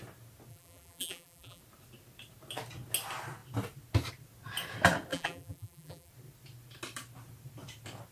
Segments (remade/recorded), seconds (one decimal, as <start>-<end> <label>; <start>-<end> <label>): 0.0-0.5 recorded; 0.5-1.6 remade; 1.6-5.1 recorded; 5.1-6.1 remade; 6.1-8.1 recorded